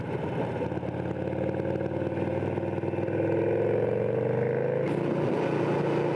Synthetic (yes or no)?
no